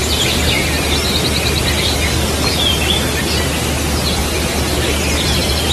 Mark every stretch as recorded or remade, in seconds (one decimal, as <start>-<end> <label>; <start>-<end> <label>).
0.0-5.7 recorded